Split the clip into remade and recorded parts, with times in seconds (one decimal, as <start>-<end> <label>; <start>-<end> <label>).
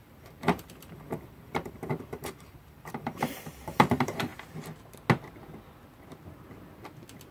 0.0-4.3 remade; 4.3-7.3 recorded